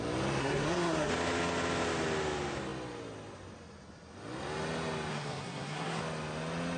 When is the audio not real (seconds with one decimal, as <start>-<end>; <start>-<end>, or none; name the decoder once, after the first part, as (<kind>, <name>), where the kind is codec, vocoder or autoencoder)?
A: 0.4-1.1 (codec, SNAC); 5.1-6.0